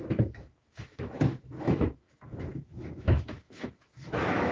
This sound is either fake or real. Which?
fake